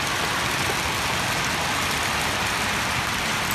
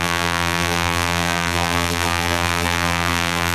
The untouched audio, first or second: first